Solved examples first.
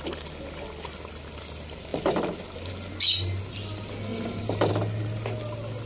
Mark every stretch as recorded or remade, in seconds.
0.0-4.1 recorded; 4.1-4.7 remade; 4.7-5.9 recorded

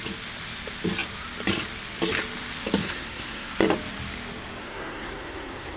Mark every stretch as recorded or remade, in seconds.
0.0-2.8 recorded; 2.8-3.5 remade; 3.5-4.6 recorded; 4.6-5.8 remade

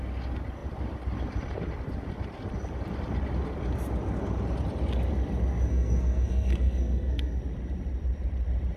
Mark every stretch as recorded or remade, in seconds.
0.0-5.7 recorded; 5.7-7.4 remade; 7.4-8.8 recorded

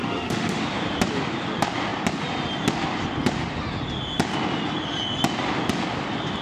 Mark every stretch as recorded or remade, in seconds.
0.0-0.6 remade; 0.6-6.4 recorded

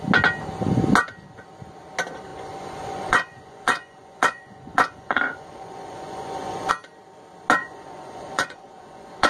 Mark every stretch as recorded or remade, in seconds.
0.0-2.3 recorded; 2.3-6.7 remade; 6.7-7.6 recorded; 7.6-9.3 remade

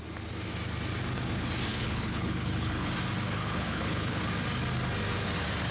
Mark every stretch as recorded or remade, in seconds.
0.0-1.7 recorded; 1.7-2.9 remade; 2.9-3.4 recorded; 3.4-4.2 remade; 4.2-5.7 recorded

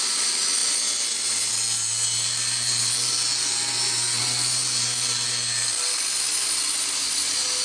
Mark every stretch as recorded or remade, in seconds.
0.0-7.6 recorded

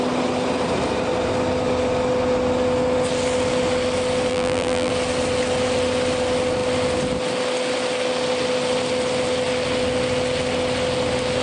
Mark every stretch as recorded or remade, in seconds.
0.0-4.3 recorded; 4.3-4.9 remade; 4.9-11.4 recorded